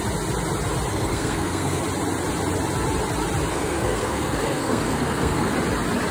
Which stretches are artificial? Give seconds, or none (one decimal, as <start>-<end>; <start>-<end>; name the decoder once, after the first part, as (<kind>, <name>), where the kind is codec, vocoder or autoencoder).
0.9-1.8 (codec, SNAC); 3.5-5.5